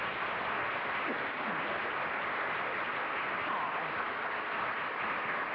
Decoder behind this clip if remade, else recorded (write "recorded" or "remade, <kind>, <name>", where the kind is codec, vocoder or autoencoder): recorded